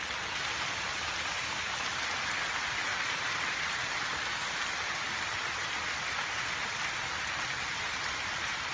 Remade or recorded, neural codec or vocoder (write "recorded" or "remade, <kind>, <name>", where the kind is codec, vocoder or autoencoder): recorded